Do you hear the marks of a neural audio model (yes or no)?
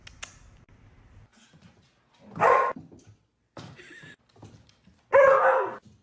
no